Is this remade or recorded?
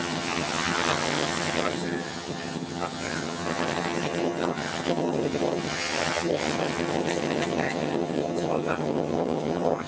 remade